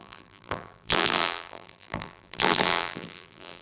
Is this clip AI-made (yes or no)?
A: yes